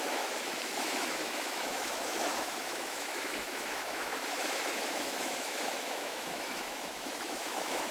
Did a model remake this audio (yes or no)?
yes